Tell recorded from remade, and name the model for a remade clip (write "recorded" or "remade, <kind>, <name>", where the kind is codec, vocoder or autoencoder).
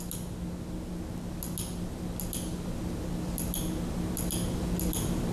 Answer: recorded